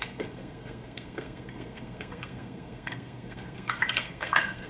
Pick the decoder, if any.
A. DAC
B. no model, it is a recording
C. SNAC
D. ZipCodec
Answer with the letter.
C